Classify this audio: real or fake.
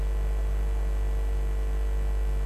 real